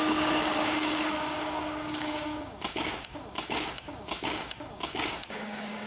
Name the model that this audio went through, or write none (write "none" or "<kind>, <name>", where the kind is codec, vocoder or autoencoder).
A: codec, DAC